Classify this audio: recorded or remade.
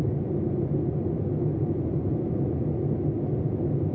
recorded